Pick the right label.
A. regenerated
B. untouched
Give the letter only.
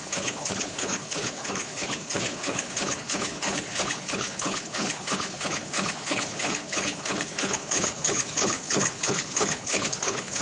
A